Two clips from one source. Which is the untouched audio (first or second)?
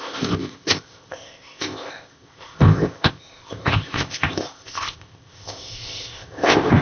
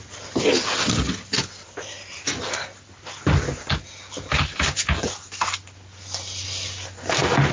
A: second